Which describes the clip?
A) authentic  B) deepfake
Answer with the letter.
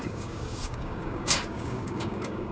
B